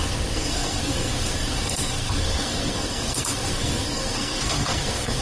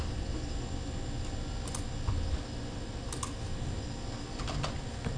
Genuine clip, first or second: second